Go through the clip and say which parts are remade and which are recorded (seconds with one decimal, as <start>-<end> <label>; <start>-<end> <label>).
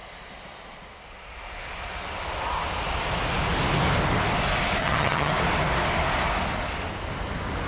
0.0-4.8 recorded; 4.8-5.3 remade; 5.3-7.7 recorded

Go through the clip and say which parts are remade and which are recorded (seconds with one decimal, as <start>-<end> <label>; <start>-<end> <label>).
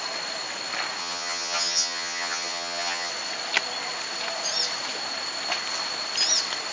0.0-1.0 recorded; 1.0-3.1 remade; 3.1-6.7 recorded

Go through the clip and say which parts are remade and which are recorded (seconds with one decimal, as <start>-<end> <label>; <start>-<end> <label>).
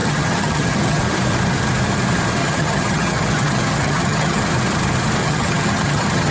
0.0-1.0 remade; 1.0-2.4 recorded; 2.4-4.4 remade; 4.4-5.2 recorded; 5.2-6.3 remade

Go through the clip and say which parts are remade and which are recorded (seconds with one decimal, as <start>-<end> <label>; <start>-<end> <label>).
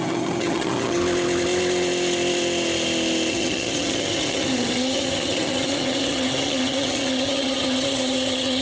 0.0-1.0 remade; 1.0-3.3 recorded; 3.3-8.6 remade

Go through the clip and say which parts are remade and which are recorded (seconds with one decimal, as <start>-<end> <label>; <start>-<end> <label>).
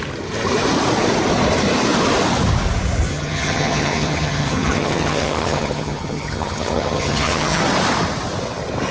0.0-3.1 recorded; 3.1-7.6 remade; 7.6-8.9 recorded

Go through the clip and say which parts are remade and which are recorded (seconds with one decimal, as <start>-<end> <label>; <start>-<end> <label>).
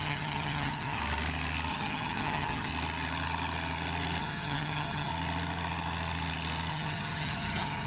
0.0-1.0 remade; 1.0-1.7 recorded; 1.7-2.7 remade; 2.7-4.2 recorded; 4.2-5.1 remade; 5.1-6.7 recorded; 6.7-7.9 remade